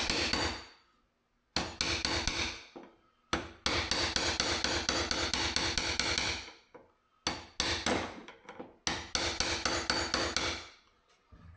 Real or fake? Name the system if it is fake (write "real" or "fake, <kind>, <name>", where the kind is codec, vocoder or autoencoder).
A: real